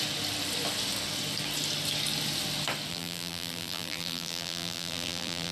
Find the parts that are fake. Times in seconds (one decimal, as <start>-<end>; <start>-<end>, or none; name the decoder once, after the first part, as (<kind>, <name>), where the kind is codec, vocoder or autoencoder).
2.9-5.5 (vocoder, BigVGAN v2)